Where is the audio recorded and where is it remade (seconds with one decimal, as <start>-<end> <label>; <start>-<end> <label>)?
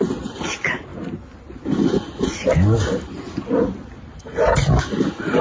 0.0-5.4 recorded